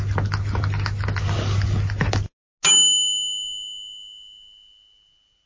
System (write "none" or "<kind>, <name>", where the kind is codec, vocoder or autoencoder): none